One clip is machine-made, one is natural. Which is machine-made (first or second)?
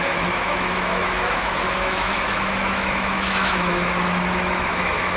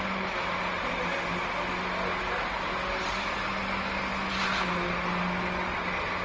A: first